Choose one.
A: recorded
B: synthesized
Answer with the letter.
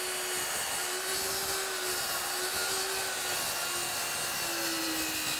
A